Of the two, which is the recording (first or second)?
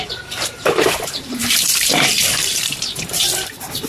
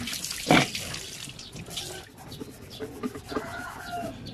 second